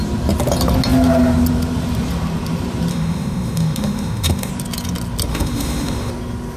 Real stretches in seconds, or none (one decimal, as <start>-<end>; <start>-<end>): 0.0-2.9; 4.5-5.3; 6.1-6.6

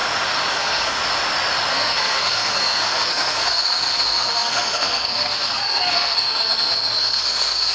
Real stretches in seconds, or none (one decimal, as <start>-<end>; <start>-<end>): 0.0-0.5; 1.0-1.7

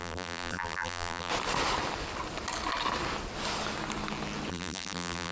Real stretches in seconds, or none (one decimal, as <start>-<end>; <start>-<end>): 1.3-4.5

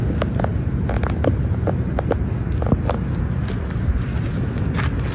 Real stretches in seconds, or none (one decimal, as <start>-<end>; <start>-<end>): 0.0-5.1